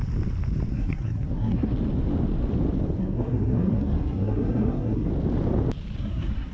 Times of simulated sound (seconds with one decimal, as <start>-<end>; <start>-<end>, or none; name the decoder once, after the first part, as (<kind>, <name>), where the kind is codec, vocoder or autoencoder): 0.7-1.7 (codec, SNAC); 3.0-5.1; 6.0-6.5